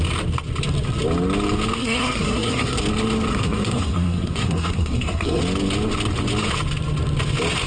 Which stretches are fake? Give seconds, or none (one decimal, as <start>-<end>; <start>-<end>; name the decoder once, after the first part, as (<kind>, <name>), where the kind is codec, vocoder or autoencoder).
1.8-2.8 (codec, SNAC); 3.3-5.4